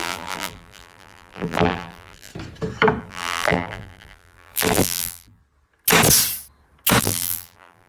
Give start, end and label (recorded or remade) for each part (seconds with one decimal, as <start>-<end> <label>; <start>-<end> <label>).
0.0-2.3 remade; 2.3-3.0 recorded; 3.0-5.4 remade; 5.4-7.0 recorded; 7.0-7.9 remade